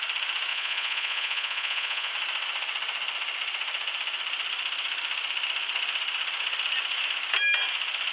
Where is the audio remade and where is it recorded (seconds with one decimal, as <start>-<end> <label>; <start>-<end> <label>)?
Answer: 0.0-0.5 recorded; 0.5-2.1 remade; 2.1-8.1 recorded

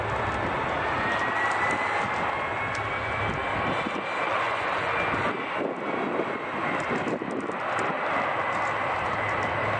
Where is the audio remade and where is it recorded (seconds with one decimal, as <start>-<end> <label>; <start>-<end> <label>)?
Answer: 0.0-4.2 recorded; 4.2-4.9 remade; 4.9-9.8 recorded

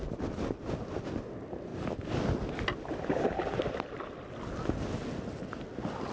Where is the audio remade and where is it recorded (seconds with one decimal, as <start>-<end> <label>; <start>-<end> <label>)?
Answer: 0.0-6.1 recorded